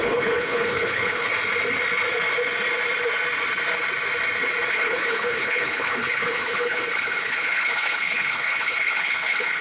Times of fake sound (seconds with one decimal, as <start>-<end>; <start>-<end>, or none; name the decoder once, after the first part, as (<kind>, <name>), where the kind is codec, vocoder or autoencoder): 0.0-1.3 (codec, HILCodec); 4.7-9.6